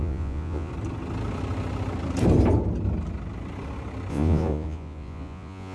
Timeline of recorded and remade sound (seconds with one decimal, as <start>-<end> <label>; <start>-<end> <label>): 0.0-0.7 remade; 0.7-4.1 recorded; 4.1-5.7 remade